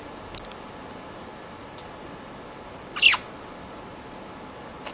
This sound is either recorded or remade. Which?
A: recorded